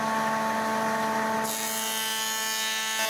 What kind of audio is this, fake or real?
real